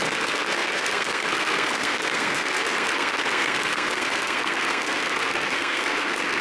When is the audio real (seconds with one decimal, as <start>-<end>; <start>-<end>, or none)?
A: none